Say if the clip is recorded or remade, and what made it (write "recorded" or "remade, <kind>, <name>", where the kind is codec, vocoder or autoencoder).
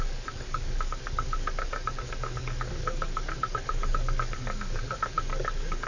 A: remade, codec, DAC